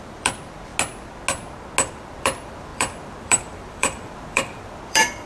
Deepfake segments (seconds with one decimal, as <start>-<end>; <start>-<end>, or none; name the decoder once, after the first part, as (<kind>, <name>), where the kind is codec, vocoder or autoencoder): 0.0-0.7 (vocoder, BigVGAN v2); 1.9-5.3